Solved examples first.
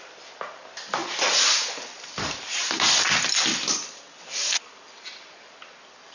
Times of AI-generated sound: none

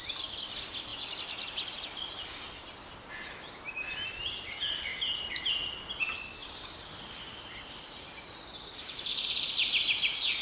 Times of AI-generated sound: 4.9-5.5 (vocoder, BigVGAN v2); 6.4-9.5

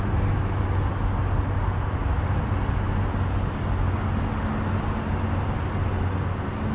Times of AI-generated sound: none

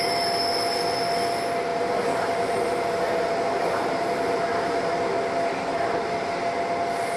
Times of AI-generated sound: 1.7-5.0 (vocoder, BigVGAN v2); 5.7-6.3

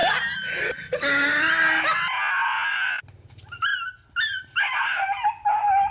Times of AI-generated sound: none

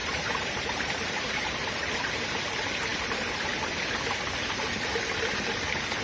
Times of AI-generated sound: 0.0-2.0 (vocoder, BigVGAN v2)

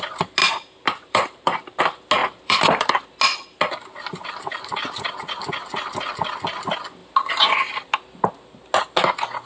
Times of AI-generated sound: 0.4-1.8 (vocoder, BigVGAN v2); 2.2-2.9; 3.8-5.1